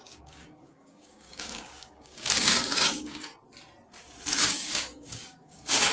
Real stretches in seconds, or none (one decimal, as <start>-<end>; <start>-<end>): 3.3-4.4